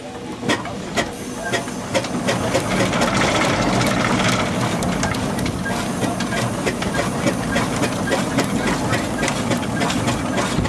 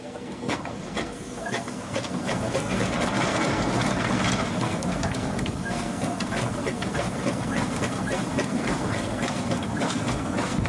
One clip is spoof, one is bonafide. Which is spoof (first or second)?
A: second